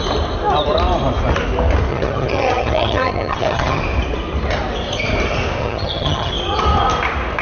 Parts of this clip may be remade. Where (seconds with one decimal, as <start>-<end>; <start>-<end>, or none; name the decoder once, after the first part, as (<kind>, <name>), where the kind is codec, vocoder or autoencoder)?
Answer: 1.9-3.8 (vocoder, HiFi-GAN); 5.6-6.3